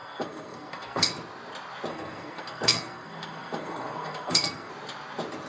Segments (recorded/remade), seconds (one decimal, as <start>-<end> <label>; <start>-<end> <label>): 0.0-1.1 remade; 1.1-1.9 recorded; 1.9-4.7 remade; 4.7-5.5 recorded